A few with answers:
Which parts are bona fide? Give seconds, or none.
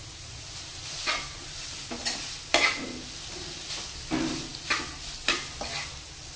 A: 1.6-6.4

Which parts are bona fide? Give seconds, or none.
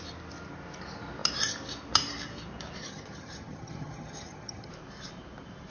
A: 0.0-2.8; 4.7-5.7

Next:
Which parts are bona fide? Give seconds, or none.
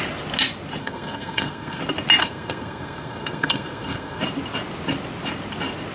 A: 0.0-0.8; 1.8-2.2; 4.2-5.9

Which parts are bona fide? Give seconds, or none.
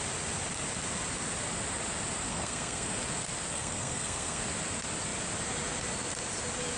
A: 0.0-2.3; 3.0-3.5; 4.4-6.8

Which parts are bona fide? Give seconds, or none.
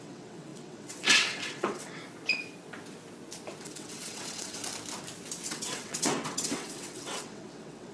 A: 2.0-3.6; 4.6-5.5